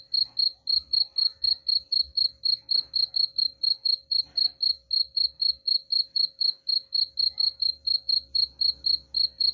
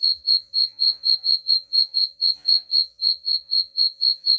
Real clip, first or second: first